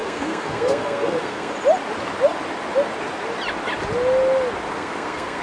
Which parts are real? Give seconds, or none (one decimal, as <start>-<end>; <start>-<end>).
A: 1.5-4.7